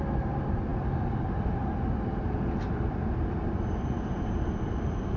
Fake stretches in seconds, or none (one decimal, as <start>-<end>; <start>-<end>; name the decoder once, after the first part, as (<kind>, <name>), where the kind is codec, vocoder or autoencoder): none